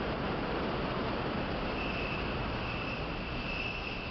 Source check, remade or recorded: recorded